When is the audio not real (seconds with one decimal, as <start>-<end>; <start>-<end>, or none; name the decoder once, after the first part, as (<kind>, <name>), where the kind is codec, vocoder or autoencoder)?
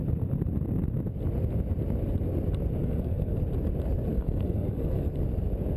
2.8-3.4 (codec, SNAC); 4.1-5.1